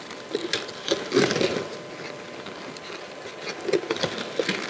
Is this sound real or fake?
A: real